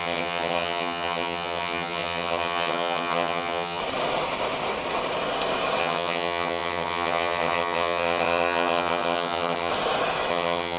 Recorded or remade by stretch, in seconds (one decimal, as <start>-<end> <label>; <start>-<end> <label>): 0.0-3.8 remade; 3.8-5.8 recorded; 5.8-9.7 remade; 9.7-10.3 recorded; 10.3-10.8 remade